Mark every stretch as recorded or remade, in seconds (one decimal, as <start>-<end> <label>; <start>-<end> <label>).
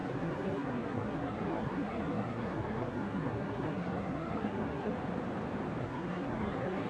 0.0-4.9 remade; 4.9-5.8 recorded; 5.8-6.9 remade